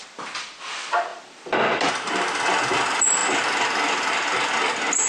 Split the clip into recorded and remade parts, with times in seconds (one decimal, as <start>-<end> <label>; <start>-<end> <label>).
0.0-5.1 recorded